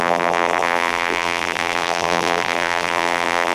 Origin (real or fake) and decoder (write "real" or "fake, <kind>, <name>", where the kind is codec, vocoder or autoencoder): fake, vocoder, BigVGAN v2